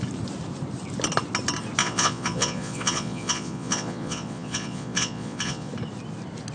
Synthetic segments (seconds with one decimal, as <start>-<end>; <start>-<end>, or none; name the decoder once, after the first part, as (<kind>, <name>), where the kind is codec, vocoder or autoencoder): 1.8-5.7 (vocoder, Vocos)